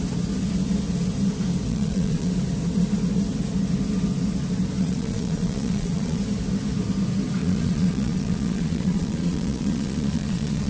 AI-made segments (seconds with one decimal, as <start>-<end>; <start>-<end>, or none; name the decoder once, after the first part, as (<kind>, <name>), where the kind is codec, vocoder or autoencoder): 1.7-2.3 (vocoder, Vocos); 4.8-6.2; 7.4-10.7